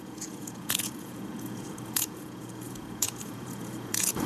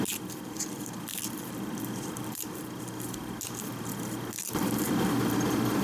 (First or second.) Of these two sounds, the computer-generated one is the first